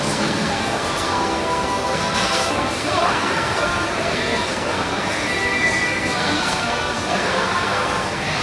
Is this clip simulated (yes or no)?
yes